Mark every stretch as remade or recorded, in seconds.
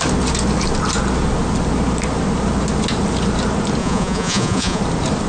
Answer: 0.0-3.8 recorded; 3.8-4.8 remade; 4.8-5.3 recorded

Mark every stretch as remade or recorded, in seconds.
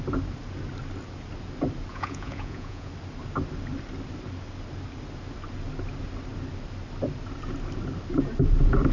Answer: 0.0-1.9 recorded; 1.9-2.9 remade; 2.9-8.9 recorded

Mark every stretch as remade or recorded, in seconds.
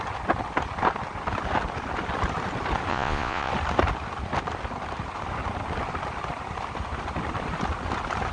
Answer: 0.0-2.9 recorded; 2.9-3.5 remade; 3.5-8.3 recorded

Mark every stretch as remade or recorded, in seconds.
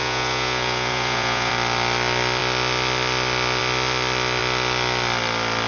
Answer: 0.0-1.5 remade; 1.5-5.7 recorded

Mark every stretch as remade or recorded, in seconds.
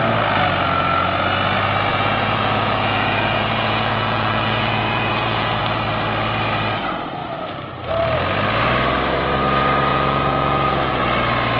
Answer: 0.0-1.9 recorded; 1.9-5.6 remade; 5.6-9.9 recorded; 9.9-11.0 remade; 11.0-11.6 recorded